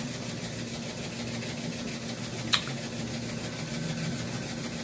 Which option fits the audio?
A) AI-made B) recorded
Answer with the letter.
B